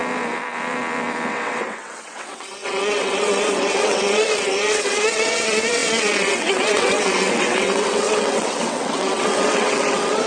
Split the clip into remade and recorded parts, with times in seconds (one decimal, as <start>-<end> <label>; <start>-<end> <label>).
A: 0.0-1.3 recorded; 1.3-10.3 remade